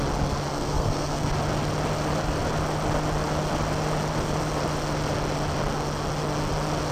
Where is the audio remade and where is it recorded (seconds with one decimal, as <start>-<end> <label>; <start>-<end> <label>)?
0.0-0.5 recorded; 0.5-1.3 remade; 1.3-6.9 recorded